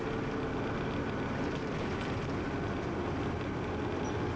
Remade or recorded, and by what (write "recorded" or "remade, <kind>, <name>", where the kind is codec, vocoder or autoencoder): recorded